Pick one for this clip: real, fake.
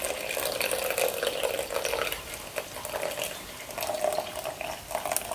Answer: real